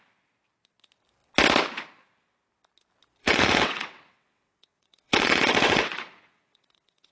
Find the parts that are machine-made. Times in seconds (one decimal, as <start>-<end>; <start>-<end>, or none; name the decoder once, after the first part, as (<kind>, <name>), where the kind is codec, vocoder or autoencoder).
3.2-7.1 (vocoder, WaveNeXt)